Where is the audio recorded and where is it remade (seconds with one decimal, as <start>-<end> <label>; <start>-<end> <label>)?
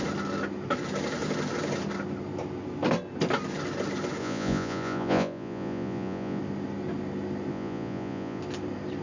0.0-4.2 recorded; 4.2-6.4 remade; 6.4-7.5 recorded; 7.5-8.4 remade; 8.4-9.0 recorded